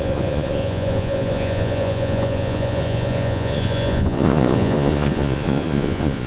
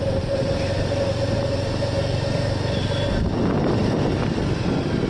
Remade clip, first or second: first